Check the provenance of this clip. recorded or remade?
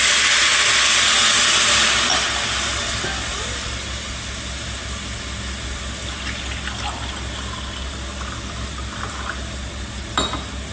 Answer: recorded